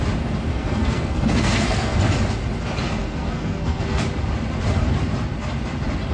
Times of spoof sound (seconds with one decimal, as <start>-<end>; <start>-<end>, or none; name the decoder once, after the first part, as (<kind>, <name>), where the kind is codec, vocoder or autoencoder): 0.5-2.0 (codec, SNAC); 3.0-4.0